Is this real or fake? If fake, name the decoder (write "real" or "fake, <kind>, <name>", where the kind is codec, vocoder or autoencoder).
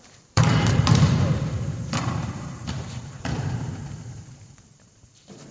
fake, vocoder, BigVGAN v2